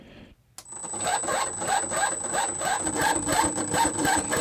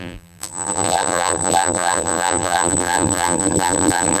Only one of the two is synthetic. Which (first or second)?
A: second